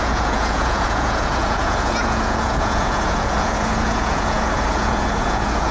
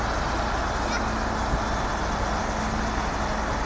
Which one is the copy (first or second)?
first